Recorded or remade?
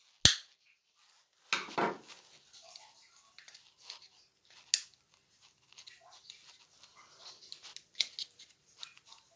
recorded